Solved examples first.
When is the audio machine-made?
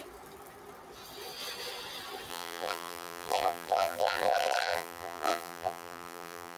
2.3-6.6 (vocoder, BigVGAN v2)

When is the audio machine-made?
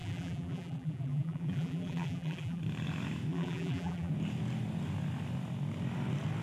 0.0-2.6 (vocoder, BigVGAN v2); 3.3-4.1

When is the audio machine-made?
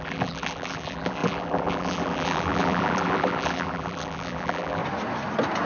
0.0-4.8 (vocoder, BigVGAN v2)